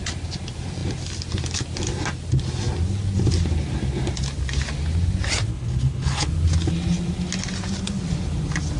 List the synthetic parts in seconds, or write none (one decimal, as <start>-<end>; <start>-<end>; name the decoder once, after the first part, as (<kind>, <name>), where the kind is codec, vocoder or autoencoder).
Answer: 5.5-6.3 (codec, HILCodec)